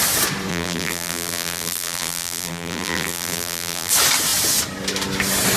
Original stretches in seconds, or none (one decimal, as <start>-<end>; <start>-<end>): 0.0-0.5; 3.9-5.6